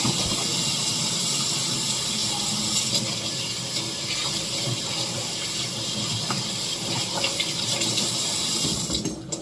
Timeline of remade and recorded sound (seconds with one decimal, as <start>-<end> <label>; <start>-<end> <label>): 0.0-2.2 remade; 2.2-4.0 recorded; 4.0-9.4 remade